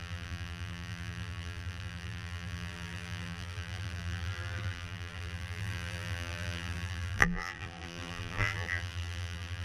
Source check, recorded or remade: remade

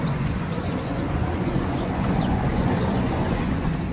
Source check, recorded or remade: remade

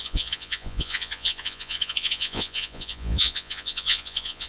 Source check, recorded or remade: remade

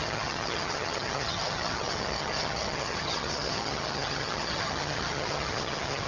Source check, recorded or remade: remade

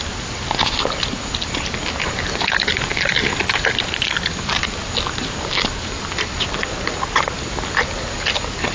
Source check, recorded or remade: recorded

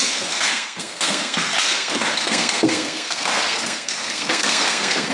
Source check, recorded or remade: remade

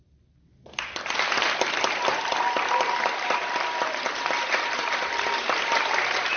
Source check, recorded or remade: recorded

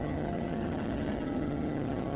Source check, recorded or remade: remade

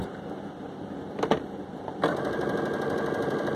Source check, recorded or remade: recorded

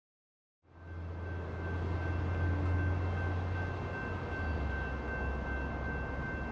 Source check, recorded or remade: recorded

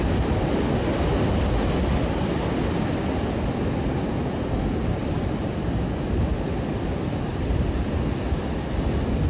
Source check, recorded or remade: recorded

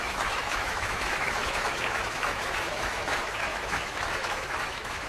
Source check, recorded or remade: remade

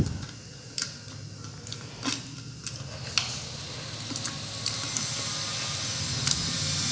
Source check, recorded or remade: recorded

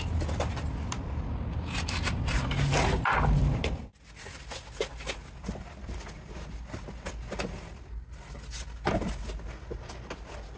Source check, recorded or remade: recorded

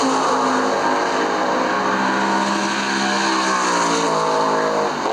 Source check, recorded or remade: recorded